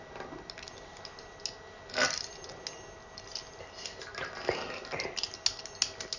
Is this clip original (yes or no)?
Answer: yes